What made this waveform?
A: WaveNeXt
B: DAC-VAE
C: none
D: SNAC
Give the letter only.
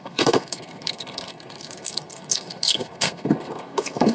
D